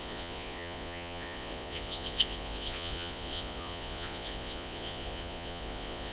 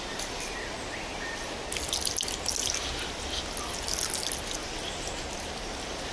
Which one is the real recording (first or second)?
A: second